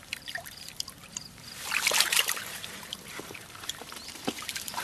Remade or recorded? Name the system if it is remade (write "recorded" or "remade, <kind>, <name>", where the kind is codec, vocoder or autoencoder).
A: remade, vocoder, BigVGAN v2